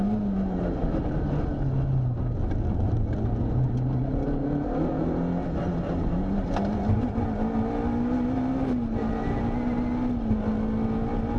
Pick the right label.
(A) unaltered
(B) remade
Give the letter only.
A